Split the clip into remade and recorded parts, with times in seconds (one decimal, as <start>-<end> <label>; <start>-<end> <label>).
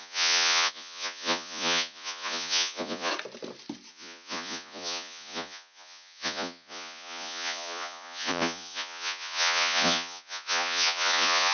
0.0-3.1 remade; 3.1-3.9 recorded; 3.9-11.5 remade